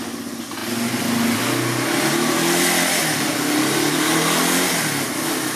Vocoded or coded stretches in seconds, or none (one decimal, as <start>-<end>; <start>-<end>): none